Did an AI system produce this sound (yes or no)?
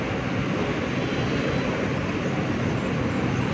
no